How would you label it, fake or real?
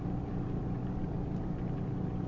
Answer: real